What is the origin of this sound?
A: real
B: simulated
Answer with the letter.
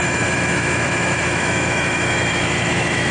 B